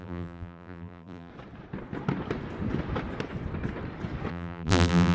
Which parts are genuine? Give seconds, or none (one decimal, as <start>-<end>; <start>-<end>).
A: 1.3-4.3